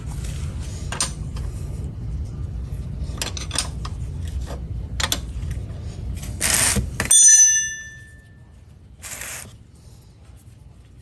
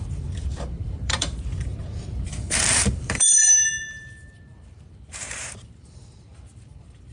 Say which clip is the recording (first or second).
first